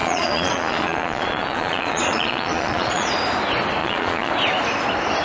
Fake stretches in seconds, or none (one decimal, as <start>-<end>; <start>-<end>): 0.0-3.1; 3.8-4.3